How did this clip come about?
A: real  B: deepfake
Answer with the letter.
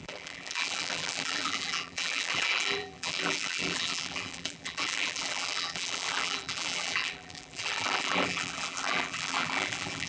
B